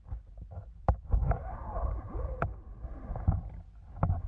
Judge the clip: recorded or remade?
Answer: recorded